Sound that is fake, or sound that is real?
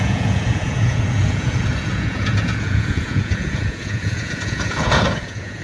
fake